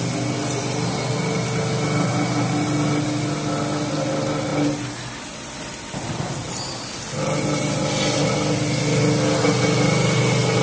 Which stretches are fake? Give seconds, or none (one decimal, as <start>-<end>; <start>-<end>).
none